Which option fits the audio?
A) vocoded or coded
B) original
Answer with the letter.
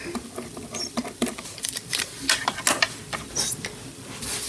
B